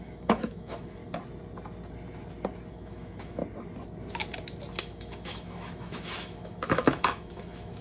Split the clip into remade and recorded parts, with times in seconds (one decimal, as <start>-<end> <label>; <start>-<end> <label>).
0.0-1.0 remade; 1.0-2.7 recorded; 2.7-3.4 remade; 3.4-4.8 recorded; 4.8-7.8 remade